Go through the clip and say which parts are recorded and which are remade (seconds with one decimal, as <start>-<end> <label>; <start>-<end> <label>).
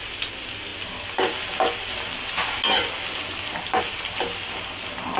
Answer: 0.0-5.2 recorded